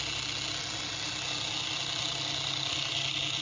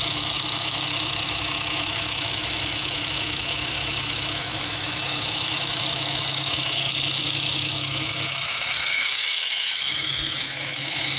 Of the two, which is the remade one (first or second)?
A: second